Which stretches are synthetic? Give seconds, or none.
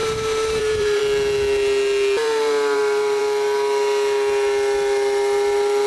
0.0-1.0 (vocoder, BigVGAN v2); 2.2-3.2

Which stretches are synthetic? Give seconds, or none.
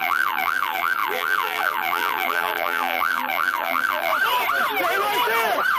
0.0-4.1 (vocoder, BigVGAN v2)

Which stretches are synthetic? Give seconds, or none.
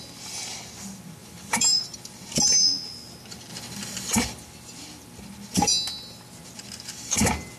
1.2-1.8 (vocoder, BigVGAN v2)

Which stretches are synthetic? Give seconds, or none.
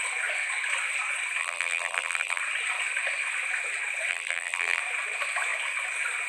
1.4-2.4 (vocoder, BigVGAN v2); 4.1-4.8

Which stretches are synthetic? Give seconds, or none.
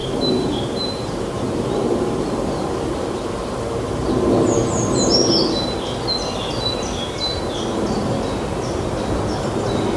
0.0-2.7 (vocoder, BigVGAN v2)